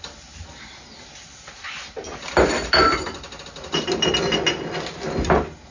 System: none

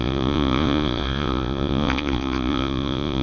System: vocoder, Vocos